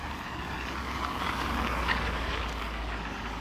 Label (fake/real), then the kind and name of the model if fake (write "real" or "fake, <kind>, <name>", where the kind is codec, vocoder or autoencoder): fake, codec, DAC